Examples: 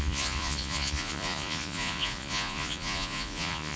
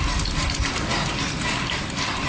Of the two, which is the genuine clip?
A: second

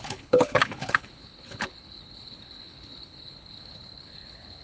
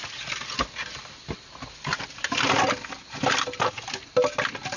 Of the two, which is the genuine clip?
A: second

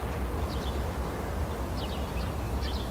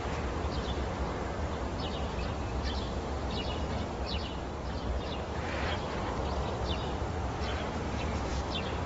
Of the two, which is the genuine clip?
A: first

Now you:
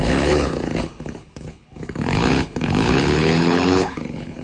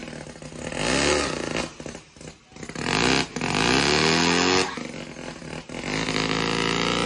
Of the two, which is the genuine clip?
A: second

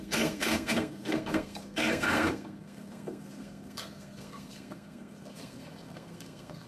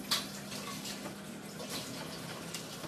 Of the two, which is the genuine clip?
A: second